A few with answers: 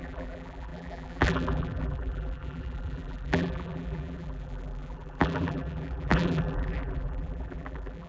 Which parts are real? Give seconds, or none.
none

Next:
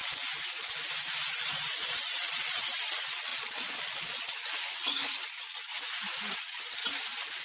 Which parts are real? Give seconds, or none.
0.0-1.3; 5.7-6.3; 6.8-7.4

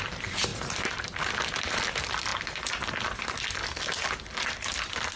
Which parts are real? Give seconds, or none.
0.0-0.5; 1.3-5.2